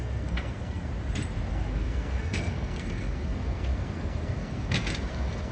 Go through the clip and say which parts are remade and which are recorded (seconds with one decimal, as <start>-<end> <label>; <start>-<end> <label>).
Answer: 0.0-0.9 remade; 0.9-1.5 recorded; 1.5-5.5 remade